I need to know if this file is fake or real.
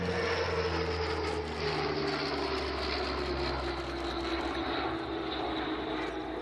real